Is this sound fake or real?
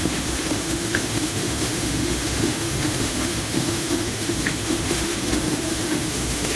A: fake